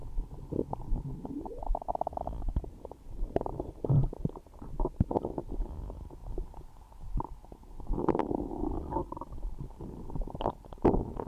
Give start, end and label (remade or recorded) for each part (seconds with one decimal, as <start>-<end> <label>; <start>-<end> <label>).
0.0-6.2 recorded; 6.2-7.2 remade; 7.2-8.2 recorded; 8.2-10.6 remade; 10.6-11.3 recorded